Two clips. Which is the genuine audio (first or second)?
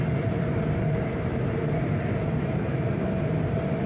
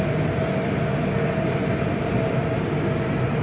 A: second